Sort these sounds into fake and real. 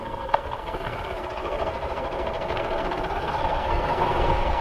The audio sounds fake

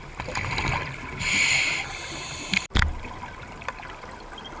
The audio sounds real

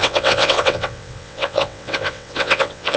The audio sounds fake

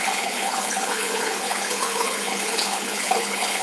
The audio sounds fake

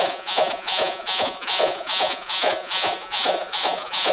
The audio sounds fake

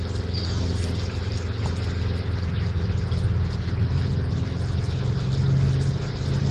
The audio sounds real